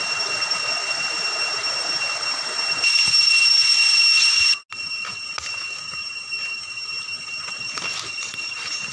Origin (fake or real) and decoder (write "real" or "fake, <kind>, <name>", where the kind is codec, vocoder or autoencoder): real